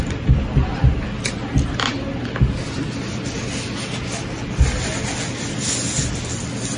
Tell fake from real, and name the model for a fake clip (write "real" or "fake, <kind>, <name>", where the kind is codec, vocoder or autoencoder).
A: real